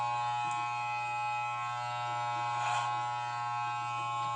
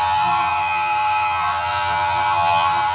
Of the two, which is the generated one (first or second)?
second